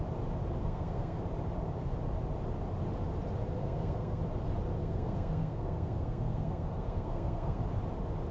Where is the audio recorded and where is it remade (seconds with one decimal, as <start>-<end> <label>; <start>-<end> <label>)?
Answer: 0.0-0.6 recorded; 0.6-1.2 remade; 1.2-3.6 recorded; 3.6-4.2 remade; 4.2-4.8 recorded; 4.8-7.6 remade; 7.6-8.3 recorded